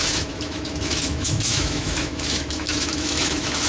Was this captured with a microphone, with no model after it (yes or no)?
no